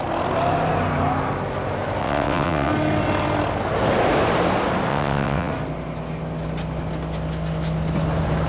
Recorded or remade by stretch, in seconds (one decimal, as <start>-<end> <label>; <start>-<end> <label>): 0.0-2.0 recorded; 2.0-2.7 remade; 2.7-4.9 recorded; 4.9-5.5 remade; 5.5-8.5 recorded